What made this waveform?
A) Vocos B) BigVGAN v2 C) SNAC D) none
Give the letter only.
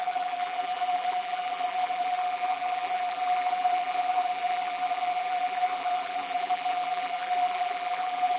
B